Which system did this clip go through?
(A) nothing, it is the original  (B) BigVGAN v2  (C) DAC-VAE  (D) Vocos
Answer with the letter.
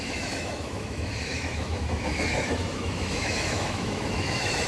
C